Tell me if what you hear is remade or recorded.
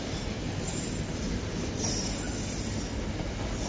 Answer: recorded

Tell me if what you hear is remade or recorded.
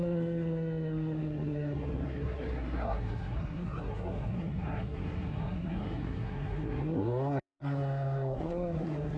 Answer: remade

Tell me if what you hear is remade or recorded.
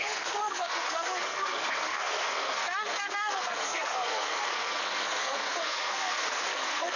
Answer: remade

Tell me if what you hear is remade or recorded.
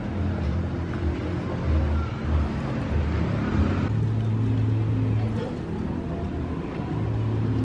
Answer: recorded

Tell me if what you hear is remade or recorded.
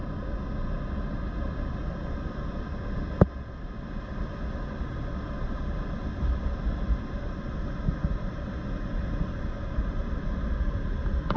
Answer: recorded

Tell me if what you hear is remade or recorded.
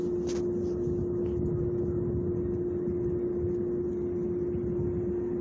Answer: recorded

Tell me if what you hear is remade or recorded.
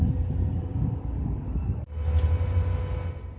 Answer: recorded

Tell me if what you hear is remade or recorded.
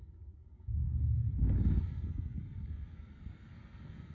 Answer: remade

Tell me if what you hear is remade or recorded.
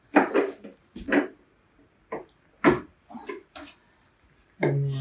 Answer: recorded